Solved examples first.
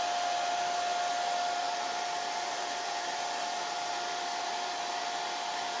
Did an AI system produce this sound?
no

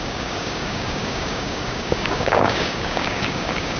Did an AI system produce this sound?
yes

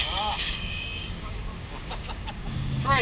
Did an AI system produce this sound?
yes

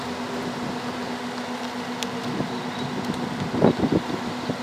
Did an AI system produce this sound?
no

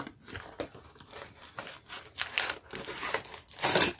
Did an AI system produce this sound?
no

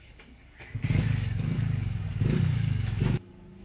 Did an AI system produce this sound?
yes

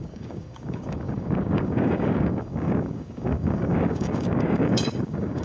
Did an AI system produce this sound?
yes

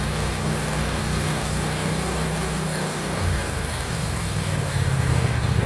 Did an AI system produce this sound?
yes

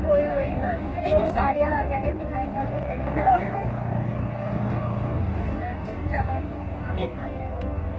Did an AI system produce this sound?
yes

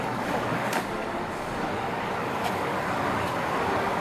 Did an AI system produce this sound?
yes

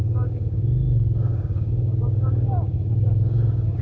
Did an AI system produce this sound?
yes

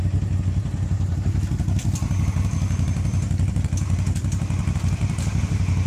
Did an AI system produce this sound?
no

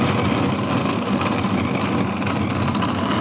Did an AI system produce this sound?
no